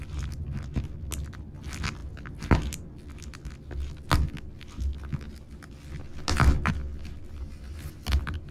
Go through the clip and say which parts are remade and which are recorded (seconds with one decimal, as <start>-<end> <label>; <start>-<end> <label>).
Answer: 0.0-8.5 recorded